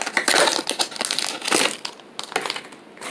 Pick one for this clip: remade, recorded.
recorded